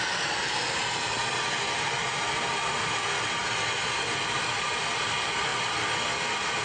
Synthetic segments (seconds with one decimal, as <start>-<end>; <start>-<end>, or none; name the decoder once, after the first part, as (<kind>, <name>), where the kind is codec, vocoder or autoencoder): none